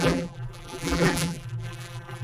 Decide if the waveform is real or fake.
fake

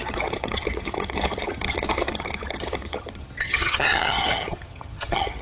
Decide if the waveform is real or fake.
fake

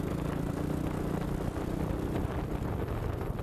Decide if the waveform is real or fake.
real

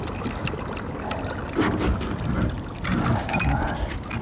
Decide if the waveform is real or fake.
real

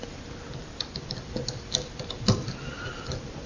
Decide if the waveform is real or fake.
real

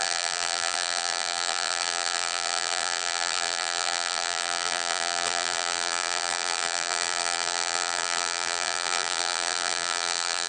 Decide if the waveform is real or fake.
fake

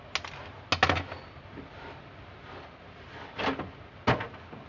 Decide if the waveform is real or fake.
real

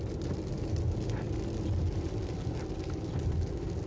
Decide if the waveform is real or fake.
real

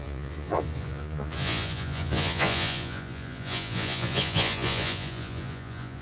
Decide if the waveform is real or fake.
fake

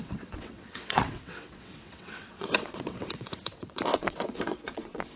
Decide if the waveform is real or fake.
fake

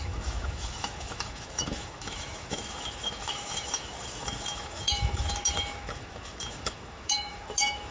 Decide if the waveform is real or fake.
fake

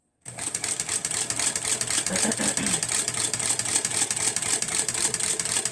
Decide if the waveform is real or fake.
real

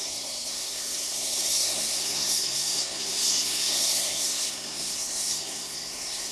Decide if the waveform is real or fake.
fake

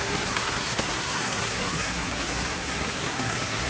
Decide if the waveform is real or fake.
fake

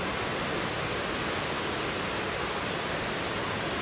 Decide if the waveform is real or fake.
real